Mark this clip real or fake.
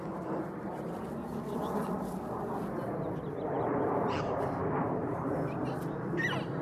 real